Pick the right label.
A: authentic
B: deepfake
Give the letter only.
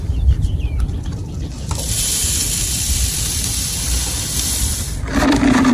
B